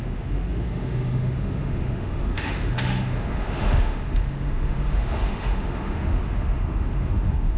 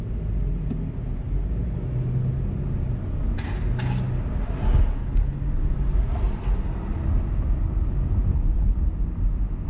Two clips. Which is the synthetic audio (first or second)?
first